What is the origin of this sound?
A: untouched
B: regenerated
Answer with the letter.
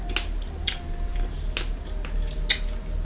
A